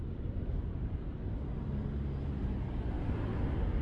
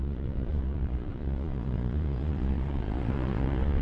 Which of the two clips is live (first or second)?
first